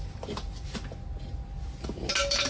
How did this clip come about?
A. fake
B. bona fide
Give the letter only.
B